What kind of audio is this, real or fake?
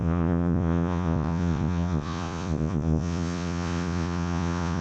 fake